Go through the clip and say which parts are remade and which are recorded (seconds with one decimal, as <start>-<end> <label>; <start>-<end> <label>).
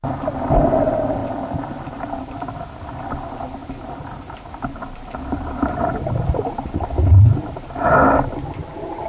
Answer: 0.0-1.2 recorded; 1.2-2.5 remade; 2.5-3.6 recorded; 3.6-6.5 remade; 6.5-9.1 recorded